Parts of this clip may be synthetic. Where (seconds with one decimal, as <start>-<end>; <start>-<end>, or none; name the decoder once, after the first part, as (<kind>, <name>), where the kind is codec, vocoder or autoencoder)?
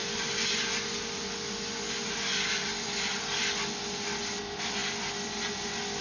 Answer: none